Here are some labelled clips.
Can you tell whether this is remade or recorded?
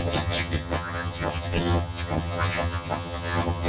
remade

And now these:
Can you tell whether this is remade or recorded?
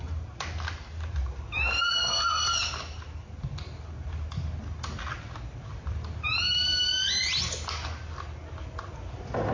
recorded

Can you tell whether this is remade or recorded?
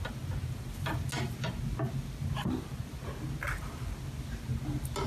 recorded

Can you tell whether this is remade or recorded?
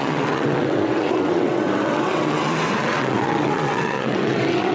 remade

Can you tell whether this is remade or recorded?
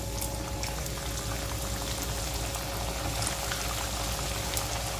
recorded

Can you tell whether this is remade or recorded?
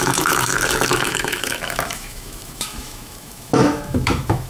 remade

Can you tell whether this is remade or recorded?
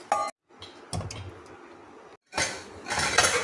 recorded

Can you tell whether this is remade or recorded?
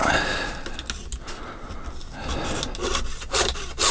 recorded